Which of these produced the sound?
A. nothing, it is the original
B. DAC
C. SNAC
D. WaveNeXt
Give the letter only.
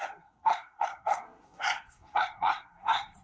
C